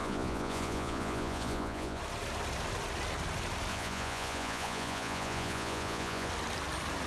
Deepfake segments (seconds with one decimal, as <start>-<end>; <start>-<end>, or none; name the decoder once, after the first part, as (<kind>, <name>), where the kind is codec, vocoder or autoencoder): 0.0-2.0 (vocoder, Vocos); 3.7-6.3